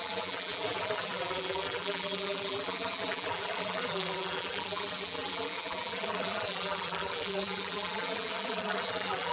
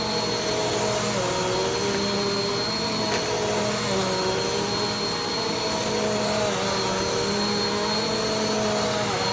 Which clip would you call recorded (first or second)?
second